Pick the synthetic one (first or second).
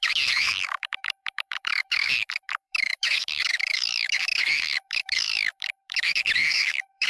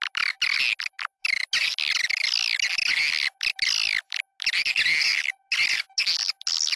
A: first